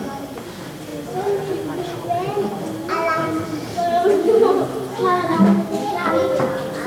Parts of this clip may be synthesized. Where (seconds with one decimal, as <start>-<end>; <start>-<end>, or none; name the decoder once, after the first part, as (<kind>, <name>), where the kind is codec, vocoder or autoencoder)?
4.9-6.1 (codec, SNAC)